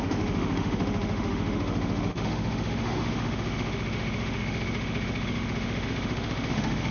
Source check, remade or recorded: remade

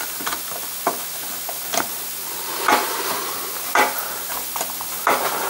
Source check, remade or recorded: recorded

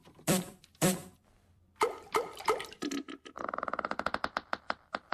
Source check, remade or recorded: remade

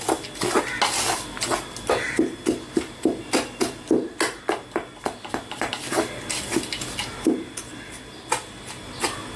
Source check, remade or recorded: recorded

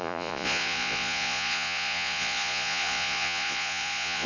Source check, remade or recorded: remade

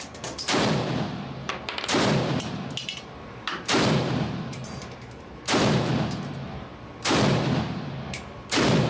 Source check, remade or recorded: remade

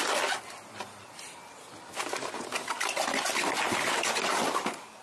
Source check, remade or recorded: recorded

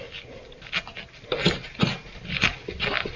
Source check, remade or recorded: recorded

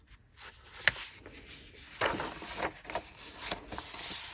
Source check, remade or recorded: recorded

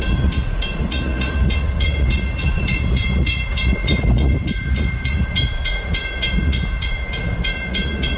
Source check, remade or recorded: remade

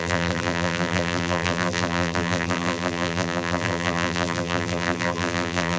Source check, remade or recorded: remade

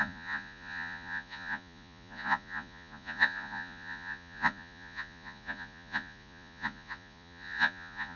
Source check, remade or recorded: remade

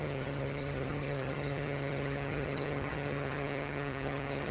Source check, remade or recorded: remade